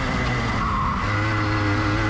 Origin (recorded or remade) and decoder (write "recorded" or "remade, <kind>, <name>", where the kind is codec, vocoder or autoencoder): recorded